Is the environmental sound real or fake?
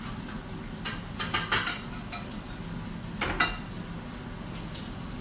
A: real